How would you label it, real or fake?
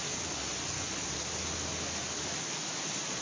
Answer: real